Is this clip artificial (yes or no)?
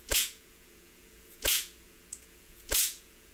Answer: yes